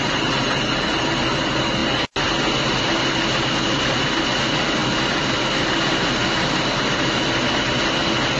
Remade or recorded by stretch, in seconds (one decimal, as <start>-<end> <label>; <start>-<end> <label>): 0.0-8.4 recorded